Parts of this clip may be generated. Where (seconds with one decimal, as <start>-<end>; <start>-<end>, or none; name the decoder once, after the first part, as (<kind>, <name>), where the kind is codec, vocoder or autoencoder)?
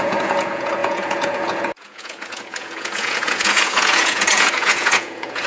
0.0-5.5 (vocoder, Vocos)